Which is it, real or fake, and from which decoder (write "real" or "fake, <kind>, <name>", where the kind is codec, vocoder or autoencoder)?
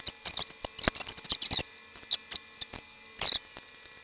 real